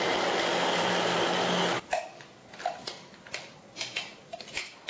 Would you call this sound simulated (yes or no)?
no